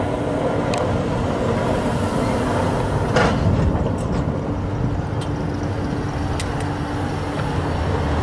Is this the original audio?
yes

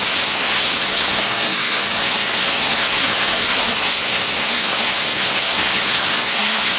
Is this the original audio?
no